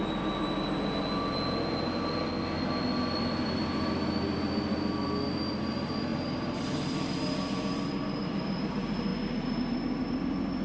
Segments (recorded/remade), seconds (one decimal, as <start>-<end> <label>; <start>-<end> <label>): 0.0-6.1 recorded; 6.1-6.6 remade; 6.6-10.6 recorded